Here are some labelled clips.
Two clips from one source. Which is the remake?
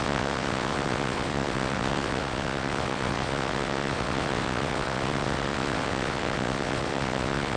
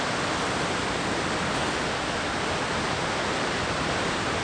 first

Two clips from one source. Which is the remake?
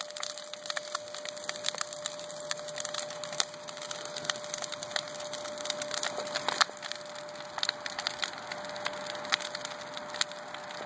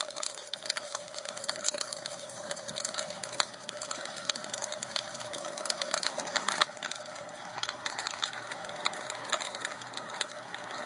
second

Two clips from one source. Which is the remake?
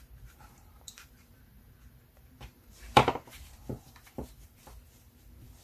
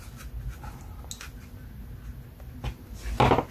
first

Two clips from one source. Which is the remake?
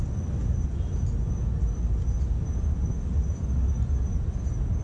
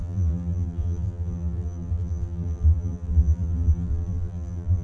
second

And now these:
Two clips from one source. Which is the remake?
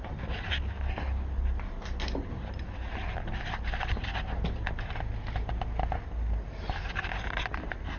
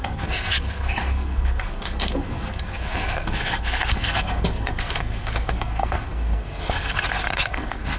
second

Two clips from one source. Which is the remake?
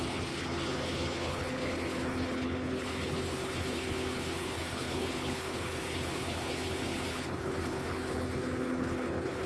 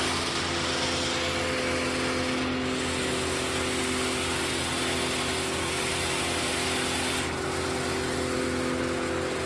first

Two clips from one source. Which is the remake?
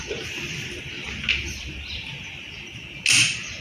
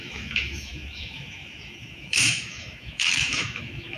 second